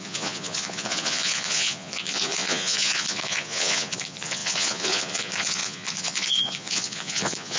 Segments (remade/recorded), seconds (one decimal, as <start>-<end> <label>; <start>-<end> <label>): 0.0-7.6 remade

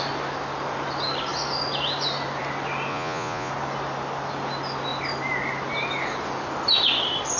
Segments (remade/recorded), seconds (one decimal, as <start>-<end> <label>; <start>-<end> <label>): 0.0-2.9 recorded; 2.9-3.5 remade; 3.5-7.4 recorded

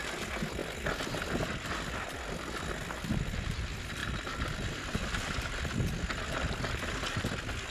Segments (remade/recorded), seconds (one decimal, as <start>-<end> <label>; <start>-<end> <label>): 0.0-7.7 recorded

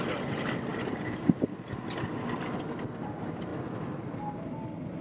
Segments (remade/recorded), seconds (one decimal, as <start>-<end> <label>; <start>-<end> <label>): 0.0-5.0 recorded

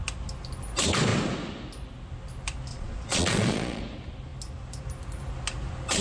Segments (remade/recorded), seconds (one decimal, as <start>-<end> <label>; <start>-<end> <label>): 0.0-2.7 recorded; 2.7-3.8 remade; 3.8-6.0 recorded

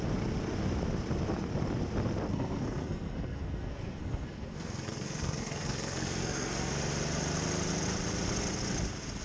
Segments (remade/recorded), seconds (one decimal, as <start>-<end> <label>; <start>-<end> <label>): 0.0-2.3 recorded; 2.3-6.7 remade; 6.7-9.2 recorded

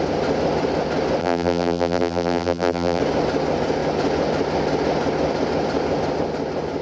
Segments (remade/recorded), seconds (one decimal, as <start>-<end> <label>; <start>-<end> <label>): 0.0-1.2 recorded; 1.2-3.0 remade; 3.0-6.8 recorded

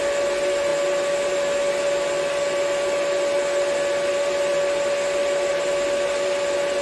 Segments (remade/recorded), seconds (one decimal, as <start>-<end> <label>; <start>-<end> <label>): 0.0-6.8 recorded